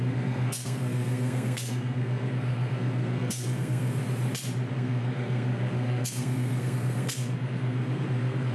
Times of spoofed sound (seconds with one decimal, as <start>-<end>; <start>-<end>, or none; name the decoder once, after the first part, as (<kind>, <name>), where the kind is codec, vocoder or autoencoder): 0.0-4.0 (codec, SNAC); 4.7-8.5